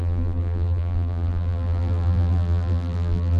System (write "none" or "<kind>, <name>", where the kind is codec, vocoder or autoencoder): vocoder, BigVGAN v2